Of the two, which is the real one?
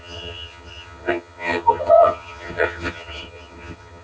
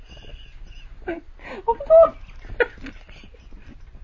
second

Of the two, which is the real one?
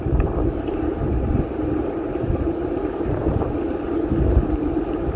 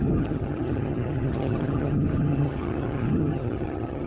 first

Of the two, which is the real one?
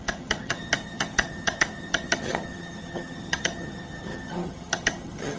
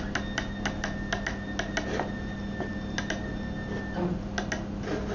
second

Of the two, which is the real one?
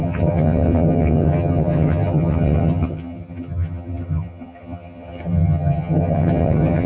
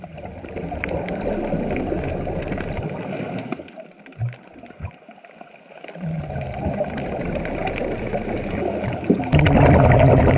second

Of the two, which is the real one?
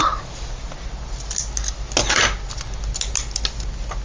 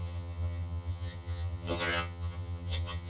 first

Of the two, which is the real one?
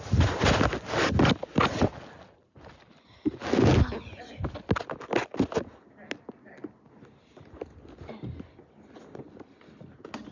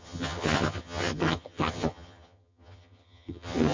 first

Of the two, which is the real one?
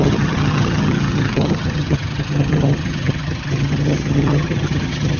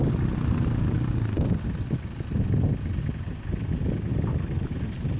second